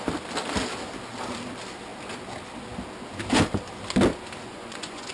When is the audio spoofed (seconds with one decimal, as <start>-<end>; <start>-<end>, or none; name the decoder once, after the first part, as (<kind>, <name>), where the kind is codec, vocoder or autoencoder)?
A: 4.5-5.1 (vocoder, Vocos)